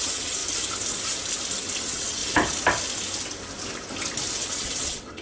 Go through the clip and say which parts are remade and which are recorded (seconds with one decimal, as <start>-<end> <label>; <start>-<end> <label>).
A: 0.0-0.4 remade; 0.4-1.8 recorded; 1.8-2.2 remade; 2.2-4.5 recorded; 4.5-5.2 remade